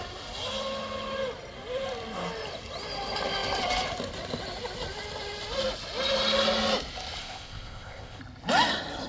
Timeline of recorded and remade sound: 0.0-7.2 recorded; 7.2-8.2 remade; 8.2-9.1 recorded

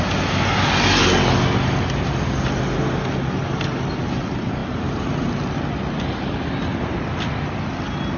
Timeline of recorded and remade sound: 0.0-8.2 recorded

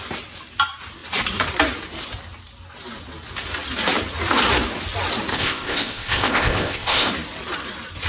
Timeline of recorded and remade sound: 0.0-5.3 recorded; 5.3-7.1 remade; 7.1-8.1 recorded